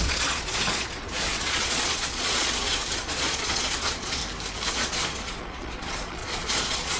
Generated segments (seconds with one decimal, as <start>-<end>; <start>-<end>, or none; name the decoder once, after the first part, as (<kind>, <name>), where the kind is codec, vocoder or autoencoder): 0.0-4.2 (vocoder, Vocos); 4.7-7.0